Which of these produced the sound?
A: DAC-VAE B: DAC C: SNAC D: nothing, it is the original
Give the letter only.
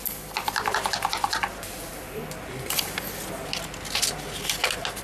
D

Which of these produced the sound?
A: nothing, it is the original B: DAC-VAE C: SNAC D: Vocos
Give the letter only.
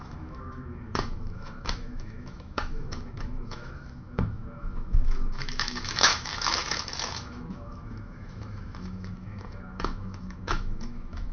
B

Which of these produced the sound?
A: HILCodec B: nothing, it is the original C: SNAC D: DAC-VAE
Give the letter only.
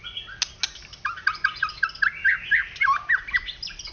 B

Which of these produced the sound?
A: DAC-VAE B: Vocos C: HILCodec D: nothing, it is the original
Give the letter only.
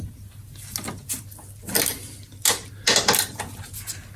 D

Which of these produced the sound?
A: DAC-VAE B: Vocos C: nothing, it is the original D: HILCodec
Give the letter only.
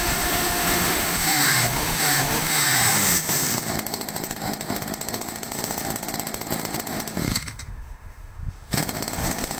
A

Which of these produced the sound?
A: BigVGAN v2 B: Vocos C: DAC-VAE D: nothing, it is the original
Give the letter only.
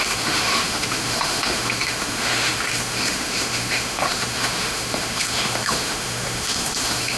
C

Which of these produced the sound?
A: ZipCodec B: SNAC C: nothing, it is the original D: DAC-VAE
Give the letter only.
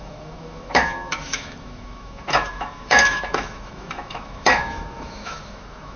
D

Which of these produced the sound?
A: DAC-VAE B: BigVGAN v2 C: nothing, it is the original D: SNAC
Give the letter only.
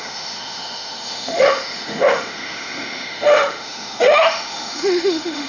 A